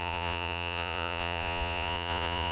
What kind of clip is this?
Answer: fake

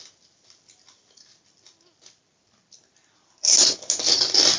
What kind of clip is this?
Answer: real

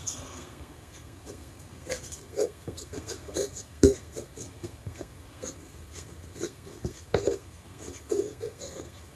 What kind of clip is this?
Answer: fake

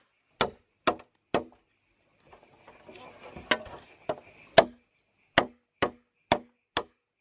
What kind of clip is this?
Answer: real